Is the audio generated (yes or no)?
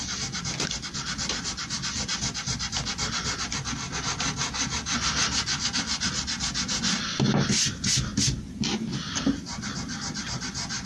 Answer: no